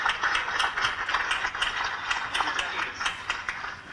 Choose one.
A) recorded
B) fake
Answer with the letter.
B